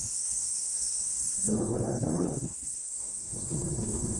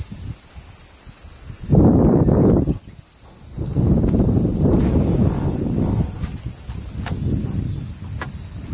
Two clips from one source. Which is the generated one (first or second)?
first